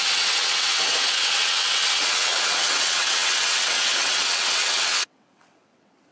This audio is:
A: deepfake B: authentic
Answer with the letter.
A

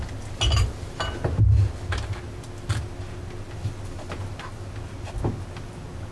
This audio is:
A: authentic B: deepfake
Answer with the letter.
A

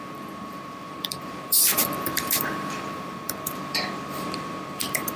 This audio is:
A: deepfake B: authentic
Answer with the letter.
A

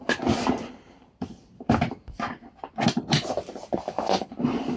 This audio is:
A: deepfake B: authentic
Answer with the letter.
B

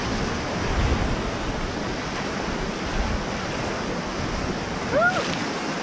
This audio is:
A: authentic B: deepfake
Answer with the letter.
A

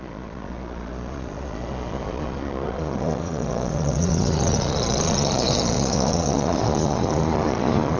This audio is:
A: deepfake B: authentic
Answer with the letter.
A